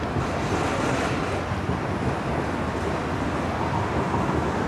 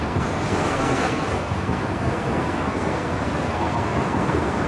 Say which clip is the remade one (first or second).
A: second